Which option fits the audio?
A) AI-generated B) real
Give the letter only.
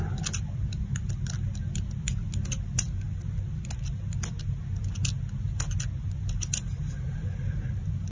B